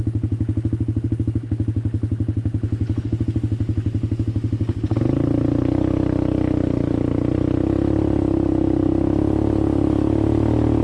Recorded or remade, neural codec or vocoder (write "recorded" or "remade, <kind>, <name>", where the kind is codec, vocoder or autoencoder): recorded